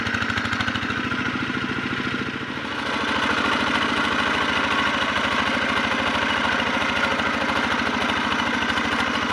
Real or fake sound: real